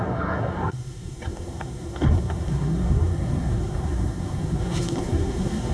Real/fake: fake